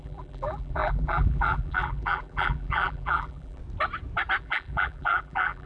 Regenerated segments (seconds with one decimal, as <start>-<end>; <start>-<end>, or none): 0.0-3.6; 4.4-5.7